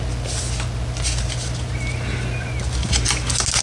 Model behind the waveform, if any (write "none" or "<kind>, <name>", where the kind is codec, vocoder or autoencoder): none